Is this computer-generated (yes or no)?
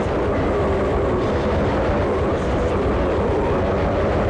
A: no